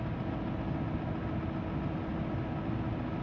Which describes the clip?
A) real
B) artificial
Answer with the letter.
A